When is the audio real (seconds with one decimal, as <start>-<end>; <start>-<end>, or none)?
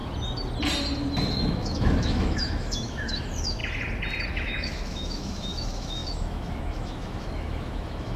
0.0-1.3; 3.6-4.3